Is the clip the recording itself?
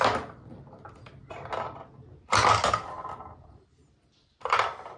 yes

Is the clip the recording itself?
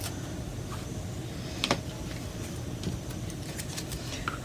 yes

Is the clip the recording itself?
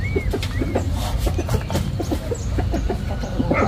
yes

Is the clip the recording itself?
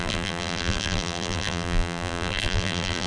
no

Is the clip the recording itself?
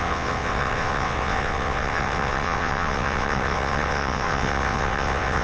no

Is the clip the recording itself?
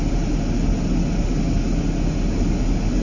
yes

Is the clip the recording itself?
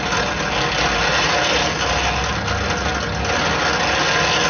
yes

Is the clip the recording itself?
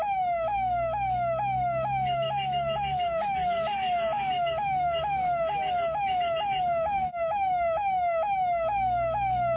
no